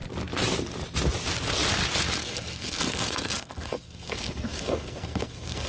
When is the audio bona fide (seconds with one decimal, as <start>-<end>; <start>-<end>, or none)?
0.0-2.2